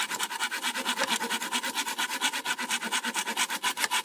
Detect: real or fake real